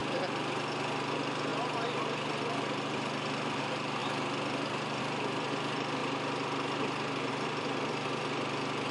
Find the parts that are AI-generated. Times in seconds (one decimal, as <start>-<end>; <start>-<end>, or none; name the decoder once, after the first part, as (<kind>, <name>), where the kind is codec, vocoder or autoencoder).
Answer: 1.1-6.0 (vocoder, BigVGAN v2); 7.3-8.9